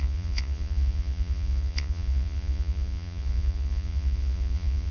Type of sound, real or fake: fake